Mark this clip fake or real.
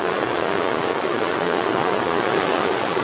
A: fake